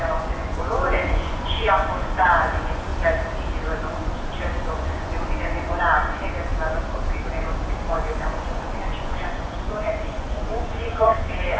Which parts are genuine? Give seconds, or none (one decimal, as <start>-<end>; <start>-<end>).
2.9-3.8; 6.5-7.9